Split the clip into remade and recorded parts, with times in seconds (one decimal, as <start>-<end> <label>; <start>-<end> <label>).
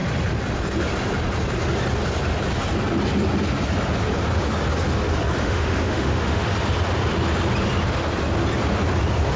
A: 0.0-5.4 recorded; 5.4-6.5 remade; 6.5-9.4 recorded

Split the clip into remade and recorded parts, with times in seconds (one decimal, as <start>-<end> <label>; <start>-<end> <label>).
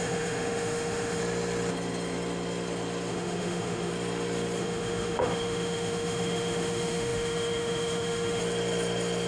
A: 0.0-1.2 remade; 1.2-3.1 recorded; 3.1-3.9 remade; 3.9-4.6 recorded; 4.6-8.4 remade; 8.4-9.3 recorded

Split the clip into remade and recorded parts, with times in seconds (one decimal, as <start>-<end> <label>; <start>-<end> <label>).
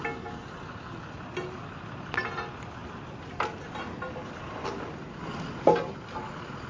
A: 0.0-6.7 recorded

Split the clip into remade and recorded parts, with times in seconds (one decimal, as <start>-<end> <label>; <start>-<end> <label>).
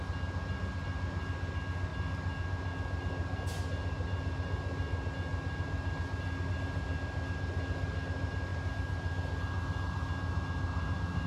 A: 0.0-11.3 recorded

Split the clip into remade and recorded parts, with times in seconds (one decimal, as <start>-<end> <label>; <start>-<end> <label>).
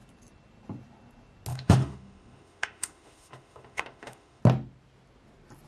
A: 0.0-1.5 recorded; 1.5-4.4 remade; 4.4-5.7 recorded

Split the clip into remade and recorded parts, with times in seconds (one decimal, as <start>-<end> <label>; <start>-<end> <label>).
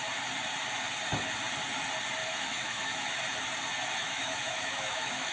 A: 0.0-2.2 recorded; 2.2-3.2 remade; 3.2-4.0 recorded; 4.0-5.3 remade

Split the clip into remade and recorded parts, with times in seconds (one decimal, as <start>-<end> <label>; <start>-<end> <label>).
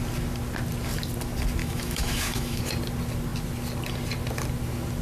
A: 0.0-1.6 recorded; 1.6-2.6 remade; 2.6-5.0 recorded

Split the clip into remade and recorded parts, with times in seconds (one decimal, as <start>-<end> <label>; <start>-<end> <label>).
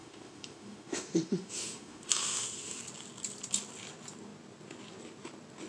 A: 0.0-2.8 remade; 2.8-5.7 recorded